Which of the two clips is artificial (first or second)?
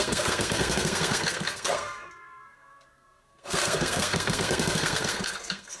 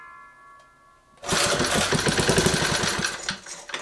first